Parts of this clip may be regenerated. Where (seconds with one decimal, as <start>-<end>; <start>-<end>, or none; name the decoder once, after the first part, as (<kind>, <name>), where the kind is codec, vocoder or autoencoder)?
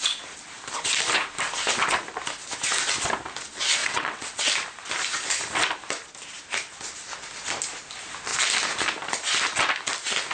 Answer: 3.8-4.5 (vocoder, WaveNeXt)